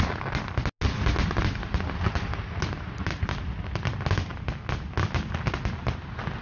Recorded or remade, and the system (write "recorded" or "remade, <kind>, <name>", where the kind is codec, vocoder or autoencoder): recorded